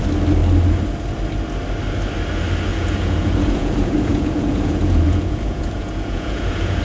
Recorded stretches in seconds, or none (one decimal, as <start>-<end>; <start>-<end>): 0.0-2.7